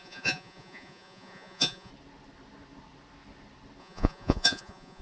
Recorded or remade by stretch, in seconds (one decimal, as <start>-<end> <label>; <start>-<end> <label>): 0.0-1.9 remade; 1.9-3.8 recorded; 3.8-5.0 remade